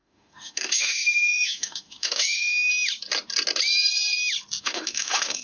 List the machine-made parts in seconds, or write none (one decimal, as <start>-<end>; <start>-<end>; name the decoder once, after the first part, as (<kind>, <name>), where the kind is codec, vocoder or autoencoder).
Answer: 0.0-2.7 (autoencoder, DAC-VAE); 4.6-5.4